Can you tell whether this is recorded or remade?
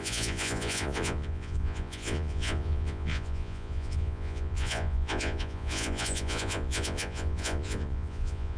remade